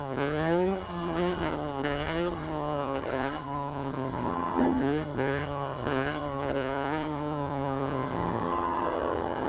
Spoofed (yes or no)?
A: yes